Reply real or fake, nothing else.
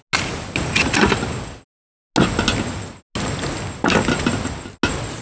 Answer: real